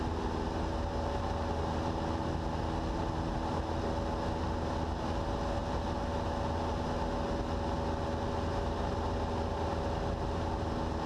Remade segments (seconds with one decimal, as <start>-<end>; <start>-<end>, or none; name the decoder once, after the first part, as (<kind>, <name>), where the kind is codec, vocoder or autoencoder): none